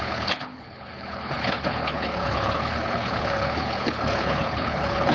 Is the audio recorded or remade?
remade